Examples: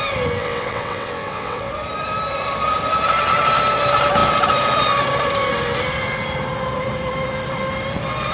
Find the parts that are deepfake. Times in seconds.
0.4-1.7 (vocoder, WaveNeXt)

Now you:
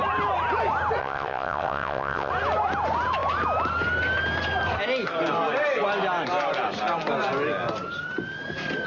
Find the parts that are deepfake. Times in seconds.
1.0-2.3 (vocoder, WaveNeXt)